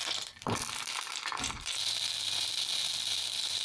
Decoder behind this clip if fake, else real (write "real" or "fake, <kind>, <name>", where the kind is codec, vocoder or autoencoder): fake, vocoder, BigVGAN v2